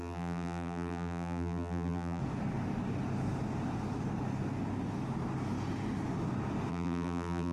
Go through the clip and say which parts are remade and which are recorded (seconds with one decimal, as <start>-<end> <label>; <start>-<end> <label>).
0.0-2.2 remade; 2.2-6.7 recorded; 6.7-7.5 remade